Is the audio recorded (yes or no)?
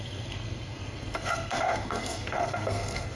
no